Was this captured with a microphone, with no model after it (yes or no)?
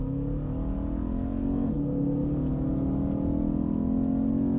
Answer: yes